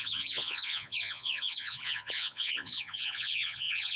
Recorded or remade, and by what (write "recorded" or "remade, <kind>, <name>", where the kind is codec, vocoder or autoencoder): remade, vocoder, Vocos